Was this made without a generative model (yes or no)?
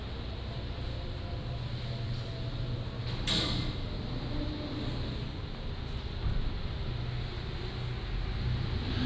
yes